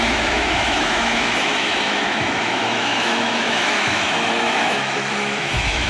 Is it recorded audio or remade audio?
remade